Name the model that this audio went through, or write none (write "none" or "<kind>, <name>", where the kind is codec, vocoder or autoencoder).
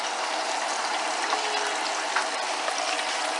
none